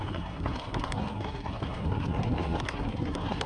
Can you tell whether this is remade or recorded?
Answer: remade